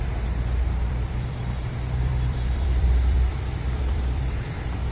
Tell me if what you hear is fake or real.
fake